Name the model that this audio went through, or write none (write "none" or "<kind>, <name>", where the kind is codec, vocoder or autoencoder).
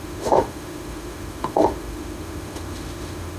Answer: autoencoder, DAC-VAE